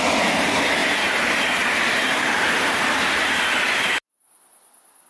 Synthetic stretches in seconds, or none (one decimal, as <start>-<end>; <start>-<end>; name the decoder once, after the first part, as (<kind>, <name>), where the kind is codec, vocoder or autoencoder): none